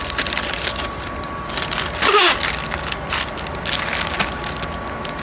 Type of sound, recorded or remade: recorded